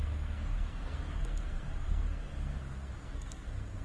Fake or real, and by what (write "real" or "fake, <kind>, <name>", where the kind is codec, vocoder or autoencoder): fake, codec, SNAC